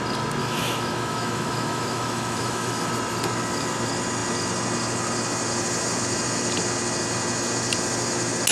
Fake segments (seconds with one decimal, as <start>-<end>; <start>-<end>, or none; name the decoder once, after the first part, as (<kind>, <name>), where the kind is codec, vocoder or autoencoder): 0.4-2.9 (autoencoder, DAC-VAE)